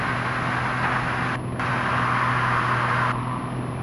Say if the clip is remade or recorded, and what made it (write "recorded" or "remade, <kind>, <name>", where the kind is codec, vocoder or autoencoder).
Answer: recorded